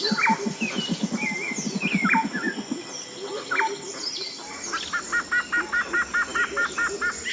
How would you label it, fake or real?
real